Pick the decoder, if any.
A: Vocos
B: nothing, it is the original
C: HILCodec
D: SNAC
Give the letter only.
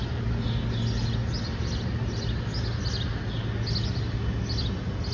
B